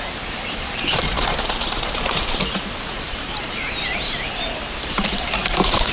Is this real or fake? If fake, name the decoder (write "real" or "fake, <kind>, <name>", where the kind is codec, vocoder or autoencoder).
fake, vocoder, BigVGAN v2